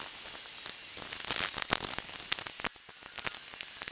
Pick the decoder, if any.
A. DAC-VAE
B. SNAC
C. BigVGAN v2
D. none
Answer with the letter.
D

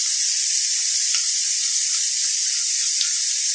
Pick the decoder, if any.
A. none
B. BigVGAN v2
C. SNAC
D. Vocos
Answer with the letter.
A